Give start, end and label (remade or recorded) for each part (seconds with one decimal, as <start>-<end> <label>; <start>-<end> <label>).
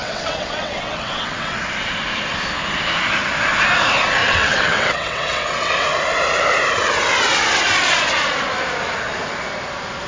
0.0-1.6 remade; 1.6-4.2 recorded; 4.2-5.7 remade; 5.7-10.1 recorded